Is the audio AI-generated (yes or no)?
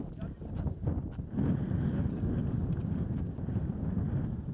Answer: no